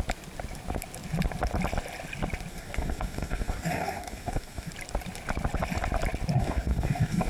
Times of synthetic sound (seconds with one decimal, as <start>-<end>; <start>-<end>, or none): 2.5-4.7; 6.4-7.3